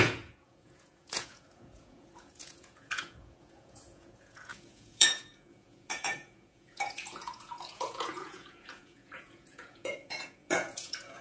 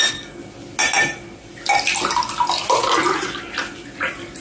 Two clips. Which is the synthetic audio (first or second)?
first